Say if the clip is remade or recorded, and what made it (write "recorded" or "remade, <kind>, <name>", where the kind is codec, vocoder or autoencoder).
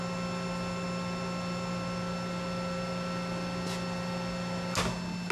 recorded